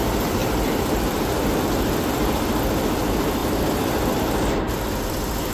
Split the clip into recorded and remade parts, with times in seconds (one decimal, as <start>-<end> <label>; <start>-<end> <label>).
0.0-0.4 recorded; 0.4-2.4 remade; 2.4-3.4 recorded; 3.4-4.2 remade; 4.2-5.5 recorded